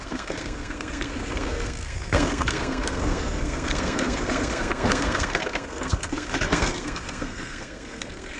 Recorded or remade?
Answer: remade